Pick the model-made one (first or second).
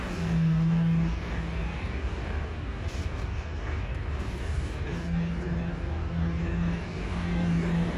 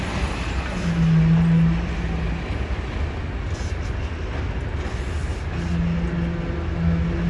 first